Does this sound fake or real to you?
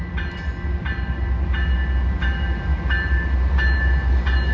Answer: real